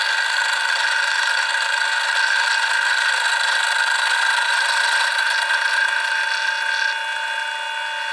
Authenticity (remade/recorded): recorded